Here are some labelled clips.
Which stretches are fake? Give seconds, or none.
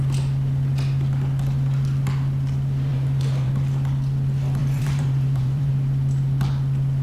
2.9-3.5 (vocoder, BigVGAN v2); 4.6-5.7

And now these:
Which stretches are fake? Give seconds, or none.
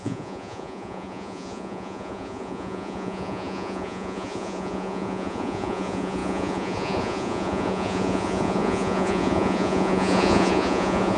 0.0-11.2 (vocoder, Vocos)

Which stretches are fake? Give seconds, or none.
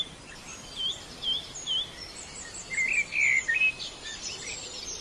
none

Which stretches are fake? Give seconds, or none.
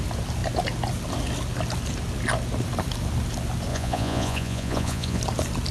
3.7-5.2 (vocoder, Vocos)